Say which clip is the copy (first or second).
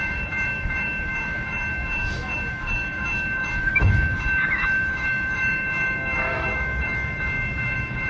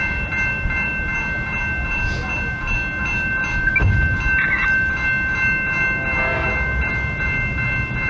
first